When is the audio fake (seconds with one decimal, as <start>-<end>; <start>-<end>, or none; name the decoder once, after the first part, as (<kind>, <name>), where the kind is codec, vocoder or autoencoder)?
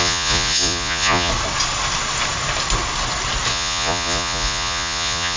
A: 0.0-1.3 (vocoder, Vocos); 3.5-5.4